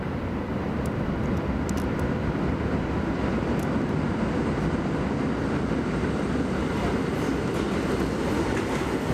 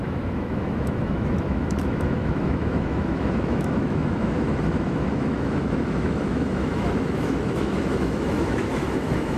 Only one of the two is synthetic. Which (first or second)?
second